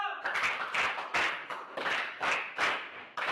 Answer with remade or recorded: recorded